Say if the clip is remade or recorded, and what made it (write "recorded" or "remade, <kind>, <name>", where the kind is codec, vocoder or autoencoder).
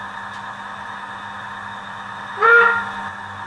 recorded